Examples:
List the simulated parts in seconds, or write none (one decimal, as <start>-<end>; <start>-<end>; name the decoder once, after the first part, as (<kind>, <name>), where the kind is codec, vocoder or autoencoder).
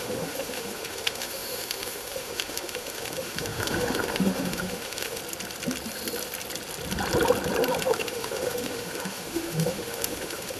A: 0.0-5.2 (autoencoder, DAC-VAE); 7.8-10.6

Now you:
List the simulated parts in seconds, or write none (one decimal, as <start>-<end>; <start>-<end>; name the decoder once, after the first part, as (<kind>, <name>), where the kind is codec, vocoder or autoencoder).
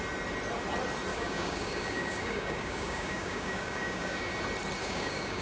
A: 1.1-4.3 (codec, DAC); 4.8-5.4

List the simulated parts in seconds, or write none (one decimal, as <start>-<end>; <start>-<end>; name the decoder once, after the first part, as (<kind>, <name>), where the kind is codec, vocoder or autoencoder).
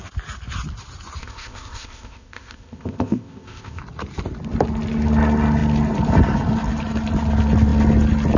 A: 1.2-3.8 (codec, ZipCodec)